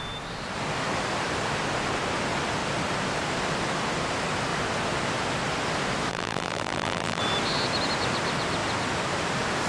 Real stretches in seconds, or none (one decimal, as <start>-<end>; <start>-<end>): 0.0-6.1; 7.2-9.7